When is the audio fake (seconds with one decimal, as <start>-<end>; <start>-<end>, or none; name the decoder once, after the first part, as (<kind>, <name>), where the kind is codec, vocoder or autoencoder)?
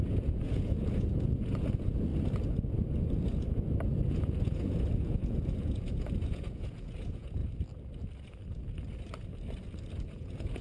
0.0-2.1 (vocoder, Vocos); 4.1-7.4; 10.1-10.6